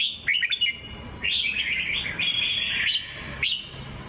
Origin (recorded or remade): recorded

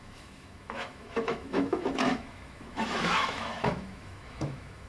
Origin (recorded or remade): remade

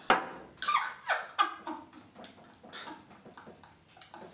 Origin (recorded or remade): recorded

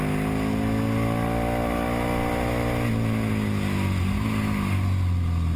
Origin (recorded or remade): recorded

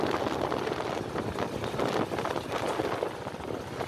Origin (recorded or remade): recorded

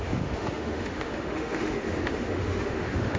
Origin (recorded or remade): remade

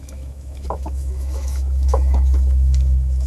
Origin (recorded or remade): remade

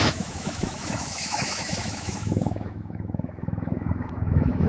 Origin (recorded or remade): remade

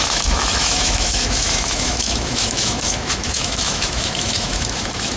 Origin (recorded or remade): remade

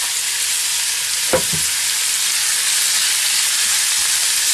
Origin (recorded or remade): recorded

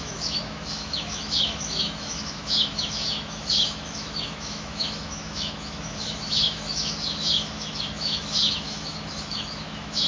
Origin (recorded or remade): remade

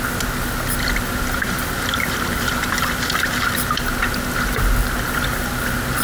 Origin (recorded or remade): recorded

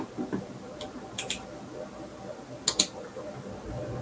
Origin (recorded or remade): recorded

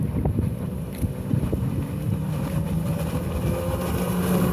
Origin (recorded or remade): recorded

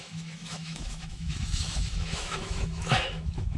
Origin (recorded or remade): remade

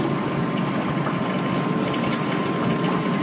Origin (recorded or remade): recorded